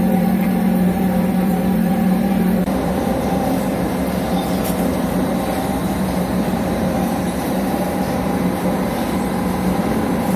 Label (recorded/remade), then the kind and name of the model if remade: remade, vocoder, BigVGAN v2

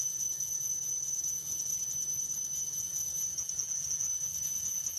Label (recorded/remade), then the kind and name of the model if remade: remade, vocoder, Vocos